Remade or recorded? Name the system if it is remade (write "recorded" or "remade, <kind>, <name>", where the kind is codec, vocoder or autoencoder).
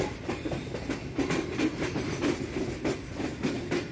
recorded